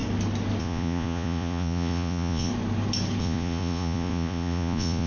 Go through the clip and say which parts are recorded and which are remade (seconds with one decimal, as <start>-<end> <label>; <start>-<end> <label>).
0.0-0.6 recorded; 0.6-2.5 remade; 2.5-3.2 recorded; 3.2-5.1 remade